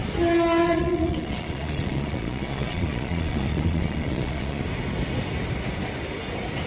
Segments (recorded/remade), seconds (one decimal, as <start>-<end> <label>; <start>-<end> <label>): 0.0-0.6 recorded; 0.6-4.6 remade; 4.6-6.7 recorded